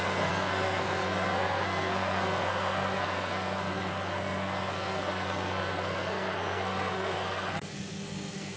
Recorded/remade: remade